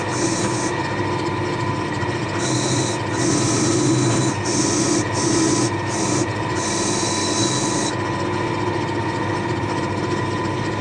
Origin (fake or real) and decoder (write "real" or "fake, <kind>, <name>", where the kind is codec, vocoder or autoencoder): real